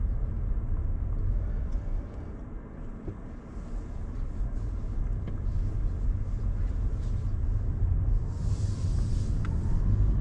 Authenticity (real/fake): real